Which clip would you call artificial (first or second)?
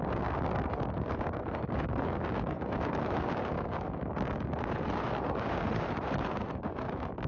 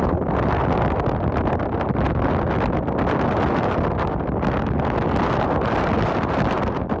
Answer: first